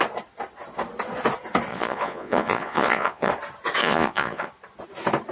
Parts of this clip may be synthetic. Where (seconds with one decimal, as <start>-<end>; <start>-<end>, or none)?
1.7-3.3; 3.8-4.5